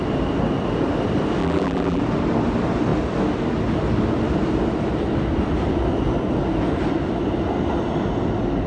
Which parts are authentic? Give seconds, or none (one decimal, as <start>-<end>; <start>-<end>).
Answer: 0.0-1.4; 2.0-8.7